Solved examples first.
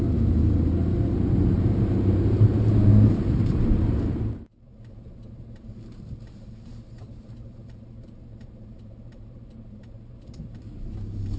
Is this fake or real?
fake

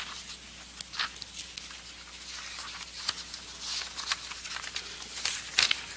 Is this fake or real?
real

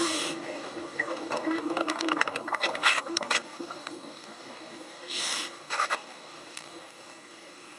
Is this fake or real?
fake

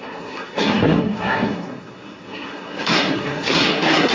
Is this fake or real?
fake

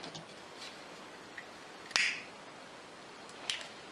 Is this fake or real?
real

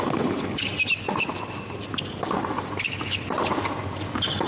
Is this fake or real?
real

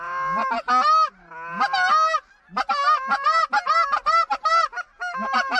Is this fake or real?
real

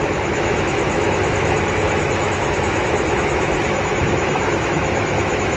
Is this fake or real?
fake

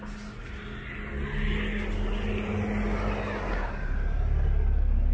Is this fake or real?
real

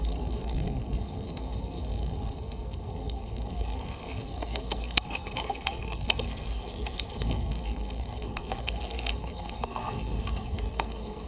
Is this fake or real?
fake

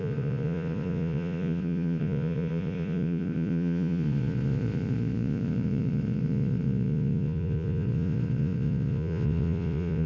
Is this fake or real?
fake